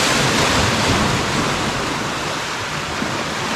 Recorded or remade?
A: recorded